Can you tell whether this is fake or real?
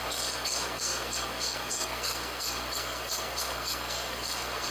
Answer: fake